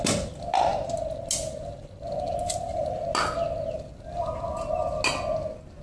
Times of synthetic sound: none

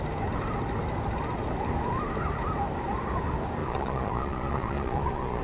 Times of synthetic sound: 3.6-5.4 (vocoder, Vocos)

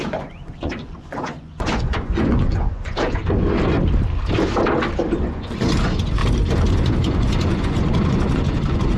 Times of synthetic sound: 0.0-3.2 (vocoder, Vocos); 5.2-6.2; 6.7-9.0

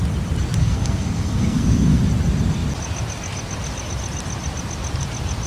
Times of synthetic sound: 0.6-2.0 (codec, SNAC)

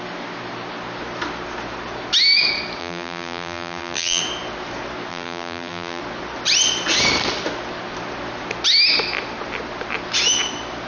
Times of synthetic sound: 2.8-4.2 (vocoder, BigVGAN v2); 5.1-6.0